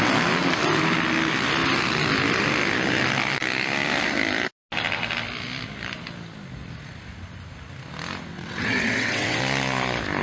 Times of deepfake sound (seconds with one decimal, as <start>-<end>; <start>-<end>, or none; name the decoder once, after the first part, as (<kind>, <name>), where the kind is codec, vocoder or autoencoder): 8.3-9.4 (vocoder, WaveNeXt)